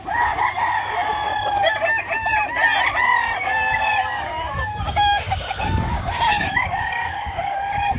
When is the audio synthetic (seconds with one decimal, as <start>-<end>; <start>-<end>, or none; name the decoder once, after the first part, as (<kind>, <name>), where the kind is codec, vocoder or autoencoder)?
0.0-1.3 (codec, DAC); 3.4-8.0